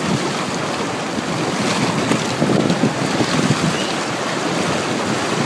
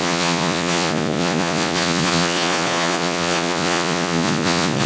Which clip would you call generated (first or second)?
second